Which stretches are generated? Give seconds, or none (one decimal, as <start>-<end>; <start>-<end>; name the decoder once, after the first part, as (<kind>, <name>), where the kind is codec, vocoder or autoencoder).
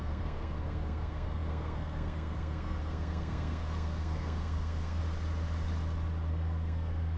0.0-5.0 (codec, SNAC); 6.3-7.2